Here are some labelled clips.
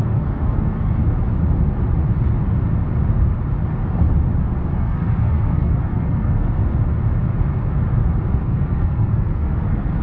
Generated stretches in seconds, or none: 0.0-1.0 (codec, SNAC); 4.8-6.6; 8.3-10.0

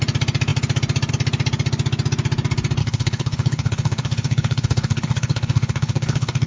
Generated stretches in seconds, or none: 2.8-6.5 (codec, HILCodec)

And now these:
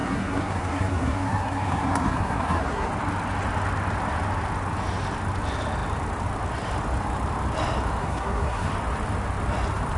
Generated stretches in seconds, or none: 0.0-2.9 (codec, SNAC); 8.0-8.7

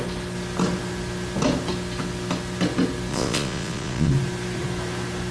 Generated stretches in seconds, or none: 3.1-4.1 (vocoder, Vocos)

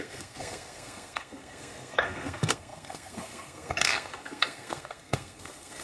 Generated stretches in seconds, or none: 0.0-5.8 (codec, SNAC)

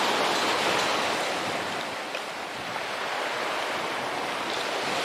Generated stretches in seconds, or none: 0.9-3.9 (vocoder, BigVGAN v2)